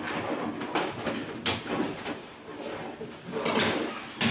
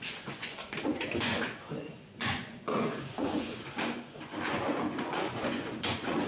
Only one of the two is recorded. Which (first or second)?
first